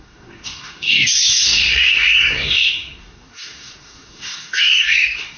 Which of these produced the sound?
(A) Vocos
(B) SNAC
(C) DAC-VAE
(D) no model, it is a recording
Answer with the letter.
B